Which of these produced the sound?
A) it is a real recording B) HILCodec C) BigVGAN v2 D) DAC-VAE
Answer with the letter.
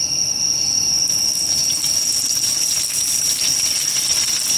A